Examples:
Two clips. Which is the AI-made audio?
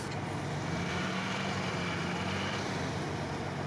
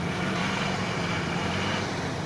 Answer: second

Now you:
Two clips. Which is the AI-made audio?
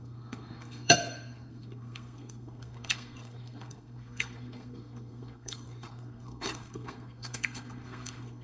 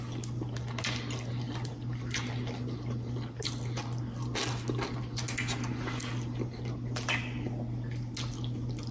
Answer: first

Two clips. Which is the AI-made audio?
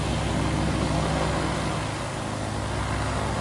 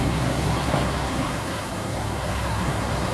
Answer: second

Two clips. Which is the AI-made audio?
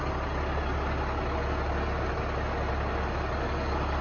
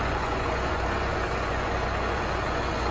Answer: second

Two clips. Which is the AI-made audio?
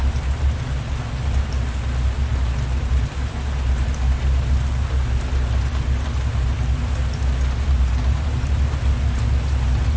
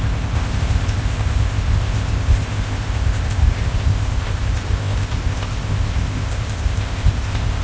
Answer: second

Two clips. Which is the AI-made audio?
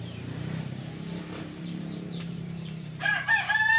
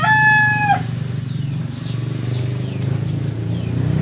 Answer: first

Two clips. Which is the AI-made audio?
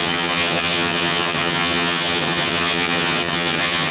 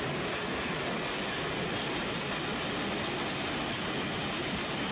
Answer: first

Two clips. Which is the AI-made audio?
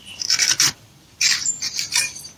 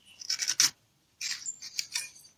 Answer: first